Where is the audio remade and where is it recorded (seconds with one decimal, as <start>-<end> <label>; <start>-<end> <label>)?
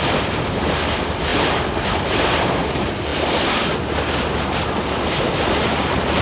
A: 0.0-6.2 recorded